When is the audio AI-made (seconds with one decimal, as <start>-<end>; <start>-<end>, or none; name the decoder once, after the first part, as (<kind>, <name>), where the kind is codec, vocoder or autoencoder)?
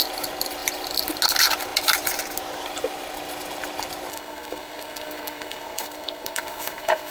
4.1-7.1 (codec, SNAC)